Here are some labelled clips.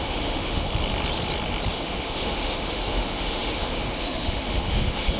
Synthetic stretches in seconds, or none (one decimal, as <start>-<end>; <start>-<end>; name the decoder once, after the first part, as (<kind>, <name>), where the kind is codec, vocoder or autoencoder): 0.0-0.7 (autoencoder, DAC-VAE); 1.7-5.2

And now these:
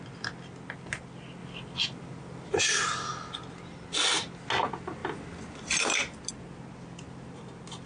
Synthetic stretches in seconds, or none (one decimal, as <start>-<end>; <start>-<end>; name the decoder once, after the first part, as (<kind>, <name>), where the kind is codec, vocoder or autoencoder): none

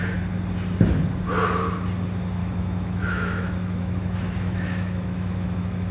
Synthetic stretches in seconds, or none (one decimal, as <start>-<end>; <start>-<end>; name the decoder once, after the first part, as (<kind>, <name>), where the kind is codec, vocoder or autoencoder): 2.4-5.9 (autoencoder, DAC-VAE)